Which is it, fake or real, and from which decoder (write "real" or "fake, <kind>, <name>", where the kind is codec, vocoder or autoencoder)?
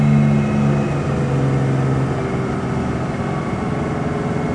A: real